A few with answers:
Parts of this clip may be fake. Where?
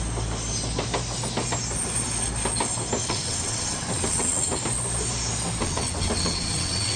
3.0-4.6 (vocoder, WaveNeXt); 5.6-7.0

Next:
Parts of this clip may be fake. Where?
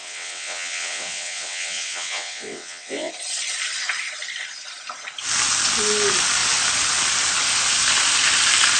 0.0-3.1 (vocoder, WaveNeXt)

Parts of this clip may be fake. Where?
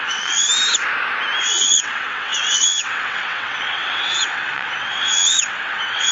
0.0-0.5 (vocoder, WaveNeXt); 1.4-6.1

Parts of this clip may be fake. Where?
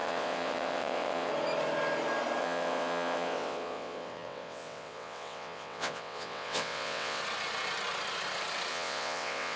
0.0-1.3 (vocoder, WaveNeXt); 2.4-7.2; 8.7-9.6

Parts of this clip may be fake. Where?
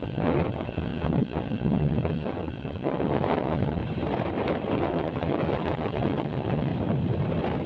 0.0-3.8 (vocoder, WaveNeXt); 4.8-6.7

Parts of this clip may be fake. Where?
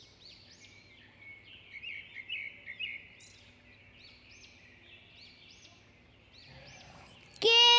none